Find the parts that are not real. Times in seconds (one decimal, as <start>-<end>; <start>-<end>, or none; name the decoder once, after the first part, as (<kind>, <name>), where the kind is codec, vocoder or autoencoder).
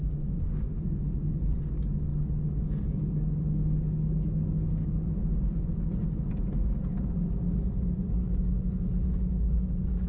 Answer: 0.0-0.8 (autoencoder, DAC-VAE)